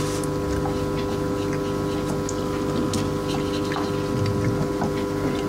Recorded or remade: recorded